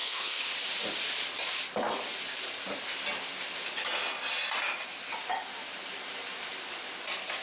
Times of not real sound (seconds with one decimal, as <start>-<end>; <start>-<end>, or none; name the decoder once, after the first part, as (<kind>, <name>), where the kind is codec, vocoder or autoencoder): 0.0-0.5 (codec, HILCodec)